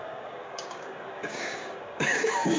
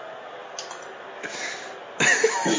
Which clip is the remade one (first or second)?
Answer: first